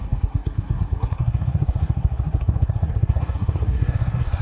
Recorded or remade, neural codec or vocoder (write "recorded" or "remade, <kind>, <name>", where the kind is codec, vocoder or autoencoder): remade, codec, SNAC